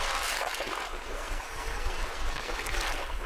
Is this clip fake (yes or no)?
yes